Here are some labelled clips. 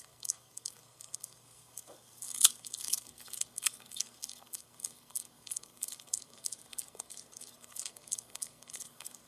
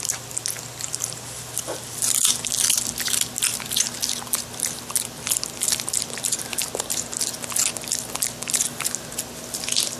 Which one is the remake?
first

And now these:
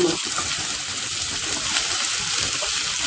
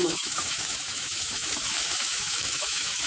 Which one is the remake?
second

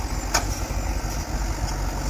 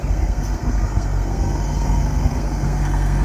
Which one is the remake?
second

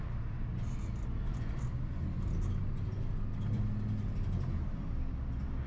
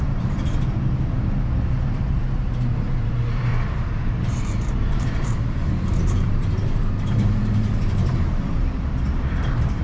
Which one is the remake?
second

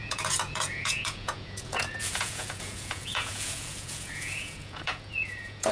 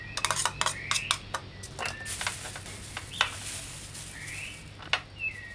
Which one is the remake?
first